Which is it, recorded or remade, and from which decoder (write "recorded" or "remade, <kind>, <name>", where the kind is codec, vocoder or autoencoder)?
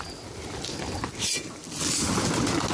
recorded